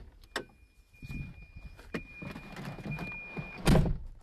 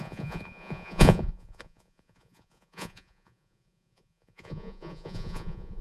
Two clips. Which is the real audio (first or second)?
first